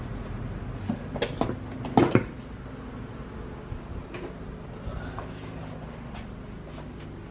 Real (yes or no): yes